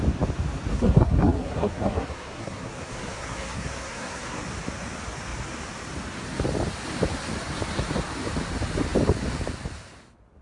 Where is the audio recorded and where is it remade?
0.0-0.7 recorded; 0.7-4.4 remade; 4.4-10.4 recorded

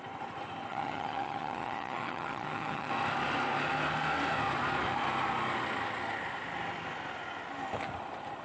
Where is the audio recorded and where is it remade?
0.0-0.7 recorded; 0.7-2.9 remade; 2.9-8.4 recorded